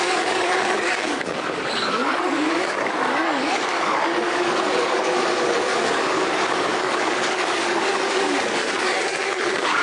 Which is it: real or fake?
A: fake